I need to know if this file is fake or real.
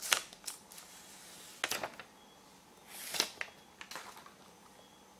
real